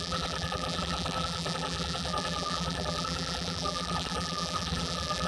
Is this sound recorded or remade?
remade